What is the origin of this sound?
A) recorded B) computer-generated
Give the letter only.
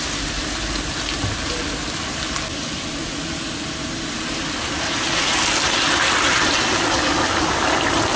A